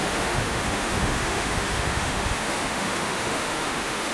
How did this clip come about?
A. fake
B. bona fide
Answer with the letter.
A